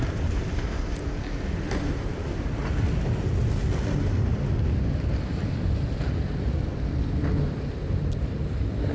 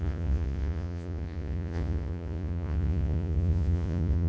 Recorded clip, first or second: first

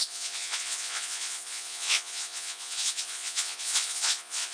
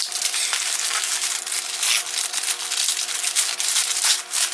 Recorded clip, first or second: second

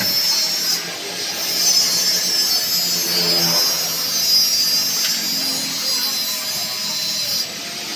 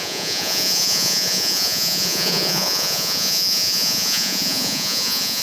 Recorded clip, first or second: first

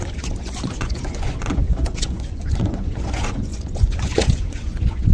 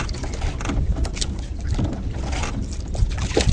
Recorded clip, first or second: second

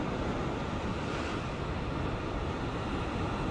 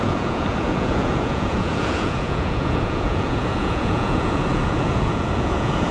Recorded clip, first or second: first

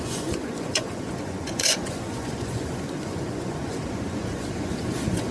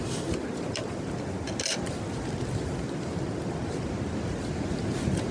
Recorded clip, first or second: second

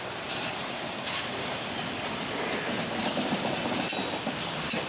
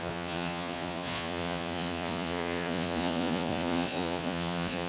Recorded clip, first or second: first